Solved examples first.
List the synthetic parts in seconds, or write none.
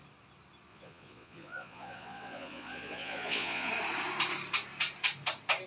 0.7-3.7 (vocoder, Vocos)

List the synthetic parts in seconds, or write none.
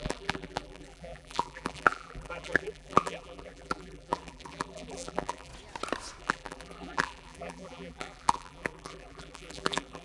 0.0-5.5 (vocoder, BigVGAN v2); 6.2-10.0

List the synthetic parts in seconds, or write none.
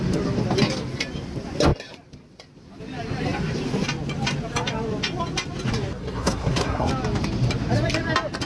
6.0-6.9 (codec, SNAC)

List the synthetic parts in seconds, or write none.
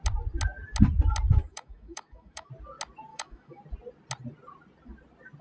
1.4-2.5 (autoencoder, DAC-VAE); 3.1-3.6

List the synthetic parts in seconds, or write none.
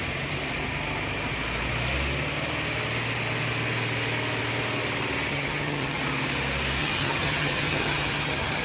5.3-6.0 (vocoder, HiFi-GAN); 6.8-8.6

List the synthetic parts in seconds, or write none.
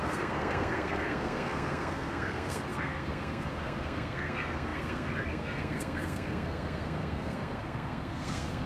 0.0-8.7 (codec, SNAC)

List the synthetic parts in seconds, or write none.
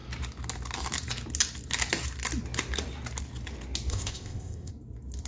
3.9-4.7 (codec, ZipCodec)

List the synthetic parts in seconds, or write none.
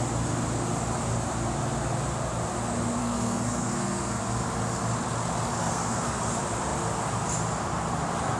3.0-4.2 (codec, SNAC); 5.6-6.2